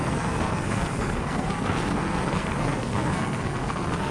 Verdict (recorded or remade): remade